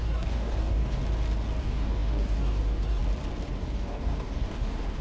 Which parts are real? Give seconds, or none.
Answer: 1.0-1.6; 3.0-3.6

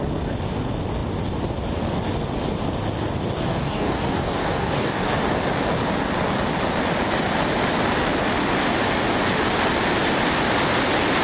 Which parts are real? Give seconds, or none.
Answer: 0.0-3.5; 5.0-11.2